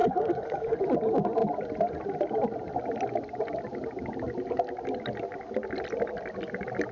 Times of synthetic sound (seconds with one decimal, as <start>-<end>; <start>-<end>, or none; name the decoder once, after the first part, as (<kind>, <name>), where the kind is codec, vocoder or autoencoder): 0.0-0.8 (codec, DAC)